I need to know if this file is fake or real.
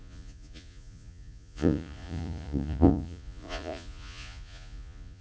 fake